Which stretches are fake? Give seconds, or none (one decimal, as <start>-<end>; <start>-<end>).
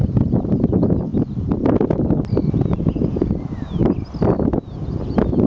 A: 1.1-2.8; 3.8-4.5